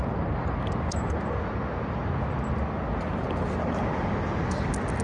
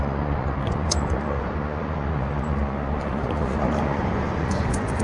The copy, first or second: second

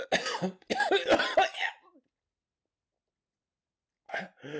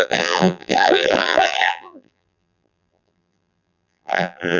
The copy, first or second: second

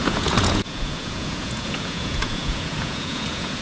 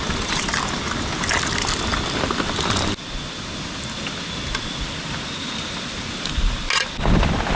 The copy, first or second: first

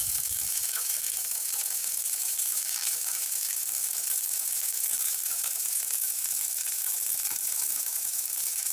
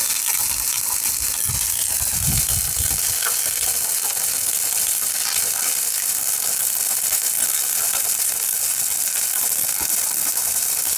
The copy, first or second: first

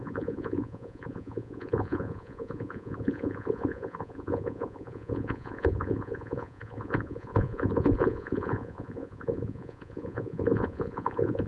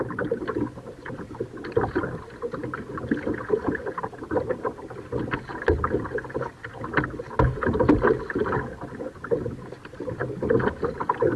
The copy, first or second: first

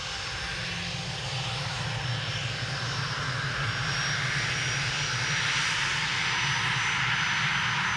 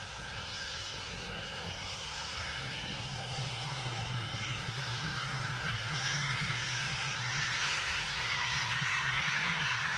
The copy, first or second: second